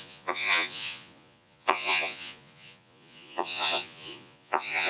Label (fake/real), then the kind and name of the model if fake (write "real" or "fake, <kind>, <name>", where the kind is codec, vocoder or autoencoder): fake, vocoder, Vocos